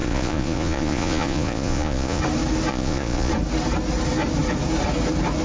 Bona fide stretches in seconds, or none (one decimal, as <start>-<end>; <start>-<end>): 2.2-2.7; 3.3-5.4